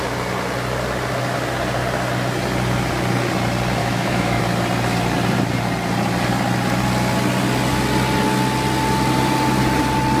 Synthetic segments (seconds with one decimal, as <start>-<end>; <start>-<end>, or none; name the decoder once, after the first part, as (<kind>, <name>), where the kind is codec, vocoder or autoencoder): 3.8-4.4 (autoencoder, DAC-VAE)